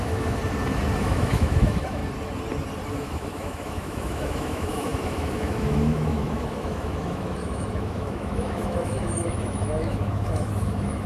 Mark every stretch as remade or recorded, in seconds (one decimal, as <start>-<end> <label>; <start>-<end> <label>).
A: 0.0-0.4 remade; 0.4-1.0 recorded; 1.0-2.0 remade; 2.0-2.9 recorded; 2.9-11.1 remade